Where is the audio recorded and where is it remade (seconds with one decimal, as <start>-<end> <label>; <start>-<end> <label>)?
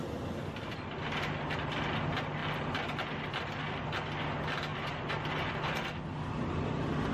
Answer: 0.0-4.7 recorded; 4.7-5.2 remade; 5.2-7.1 recorded